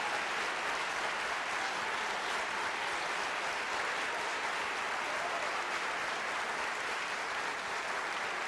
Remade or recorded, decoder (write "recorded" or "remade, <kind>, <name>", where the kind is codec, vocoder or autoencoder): recorded